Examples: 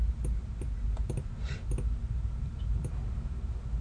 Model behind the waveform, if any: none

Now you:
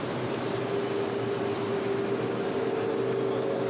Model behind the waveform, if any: none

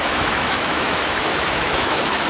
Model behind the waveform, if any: autoencoder, DAC-VAE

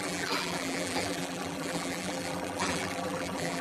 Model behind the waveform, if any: vocoder, BigVGAN v2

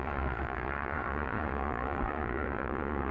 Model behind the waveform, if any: vocoder, Vocos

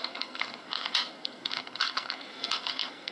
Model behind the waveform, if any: codec, SNAC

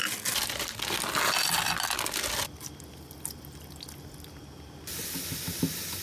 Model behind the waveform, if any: none